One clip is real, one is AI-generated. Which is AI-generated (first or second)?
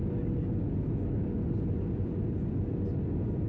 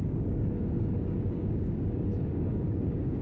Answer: second